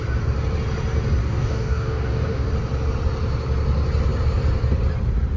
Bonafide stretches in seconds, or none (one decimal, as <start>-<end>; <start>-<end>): 0.0-1.2; 2.5-5.4